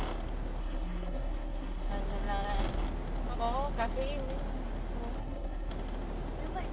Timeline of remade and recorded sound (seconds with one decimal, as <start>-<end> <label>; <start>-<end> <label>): 0.0-0.6 recorded; 0.6-1.9 remade; 1.9-5.2 recorded; 5.2-5.7 remade; 5.7-6.7 recorded